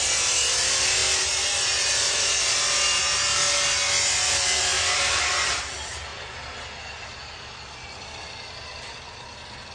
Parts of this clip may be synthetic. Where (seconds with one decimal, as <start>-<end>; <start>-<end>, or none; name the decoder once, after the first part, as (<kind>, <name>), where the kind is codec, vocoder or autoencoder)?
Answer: none